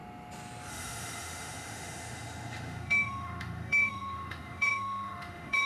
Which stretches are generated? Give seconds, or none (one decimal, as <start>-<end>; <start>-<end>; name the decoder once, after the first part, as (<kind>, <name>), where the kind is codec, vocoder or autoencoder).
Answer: 0.7-5.7 (autoencoder, DAC-VAE)